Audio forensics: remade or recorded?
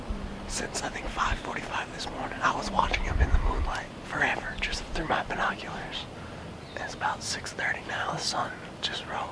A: recorded